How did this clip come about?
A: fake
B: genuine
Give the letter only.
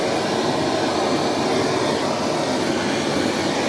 B